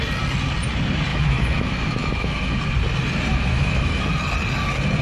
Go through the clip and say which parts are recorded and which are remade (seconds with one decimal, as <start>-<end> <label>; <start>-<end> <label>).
0.0-1.1 recorded; 1.1-2.6 remade; 2.6-3.3 recorded; 3.3-4.0 remade; 4.0-5.0 recorded